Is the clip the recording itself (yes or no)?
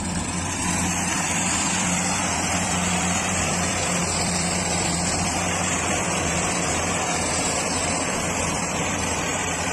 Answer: no